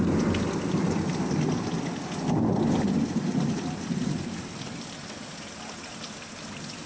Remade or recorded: recorded